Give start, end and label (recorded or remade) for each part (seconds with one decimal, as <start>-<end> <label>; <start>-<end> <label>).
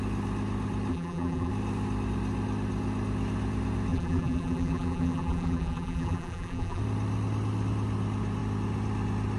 0.0-0.9 recorded; 0.9-1.5 remade; 1.5-3.9 recorded; 3.9-6.8 remade; 6.8-9.4 recorded